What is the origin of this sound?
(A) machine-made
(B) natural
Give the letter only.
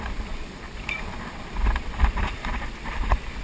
B